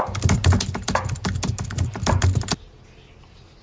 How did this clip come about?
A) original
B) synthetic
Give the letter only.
A